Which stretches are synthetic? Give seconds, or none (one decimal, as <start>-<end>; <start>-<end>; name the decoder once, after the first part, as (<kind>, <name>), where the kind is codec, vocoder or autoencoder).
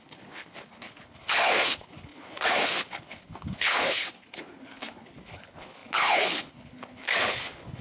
0.0-7.8 (codec, HILCodec)